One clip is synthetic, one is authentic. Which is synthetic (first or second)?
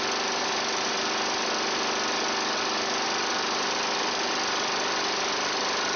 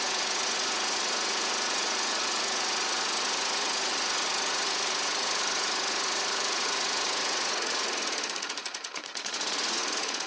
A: second